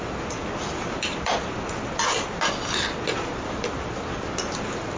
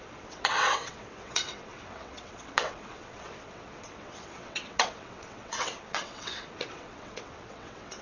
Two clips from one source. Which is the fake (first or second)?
second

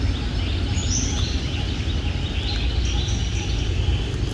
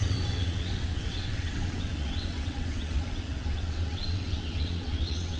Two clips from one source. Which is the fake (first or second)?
second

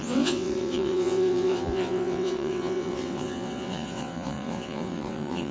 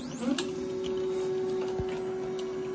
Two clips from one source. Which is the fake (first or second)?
first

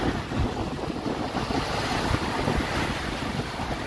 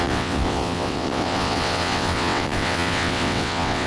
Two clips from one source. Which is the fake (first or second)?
second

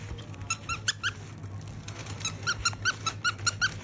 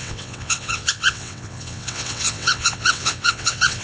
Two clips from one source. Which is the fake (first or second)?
second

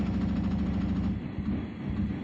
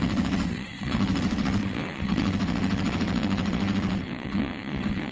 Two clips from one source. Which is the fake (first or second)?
second